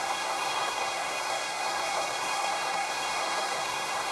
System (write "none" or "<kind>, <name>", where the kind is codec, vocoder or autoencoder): codec, SNAC